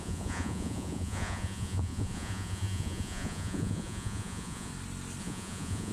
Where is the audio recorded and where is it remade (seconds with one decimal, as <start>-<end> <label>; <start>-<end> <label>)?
0.0-4.7 remade; 4.7-5.2 recorded; 5.2-5.9 remade